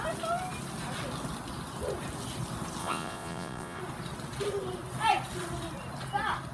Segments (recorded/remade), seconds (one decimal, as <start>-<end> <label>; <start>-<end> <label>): 0.0-2.8 recorded; 2.8-3.8 remade; 3.8-6.5 recorded